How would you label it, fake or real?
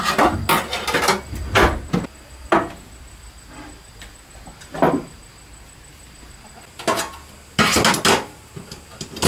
real